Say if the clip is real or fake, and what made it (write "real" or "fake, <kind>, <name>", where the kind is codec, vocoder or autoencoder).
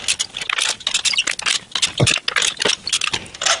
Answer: real